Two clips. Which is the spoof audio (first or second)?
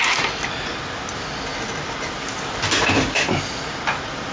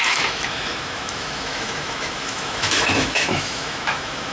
second